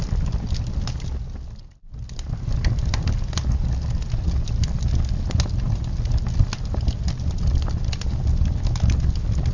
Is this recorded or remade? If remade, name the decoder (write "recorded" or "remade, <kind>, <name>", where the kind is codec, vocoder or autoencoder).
recorded